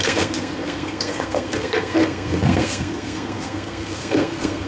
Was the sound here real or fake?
fake